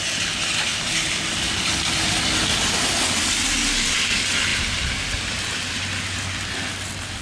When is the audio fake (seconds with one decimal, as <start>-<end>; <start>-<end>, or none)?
4.5-5.8